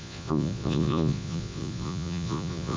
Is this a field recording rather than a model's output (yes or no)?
no